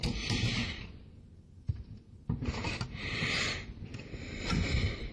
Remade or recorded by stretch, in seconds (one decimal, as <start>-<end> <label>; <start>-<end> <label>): 0.0-3.1 remade; 3.1-3.9 recorded; 3.9-5.1 remade